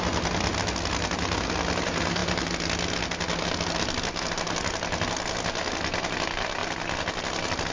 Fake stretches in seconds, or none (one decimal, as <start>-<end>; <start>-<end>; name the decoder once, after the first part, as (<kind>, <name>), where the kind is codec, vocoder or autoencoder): 6.6-7.2 (vocoder, BigVGAN v2)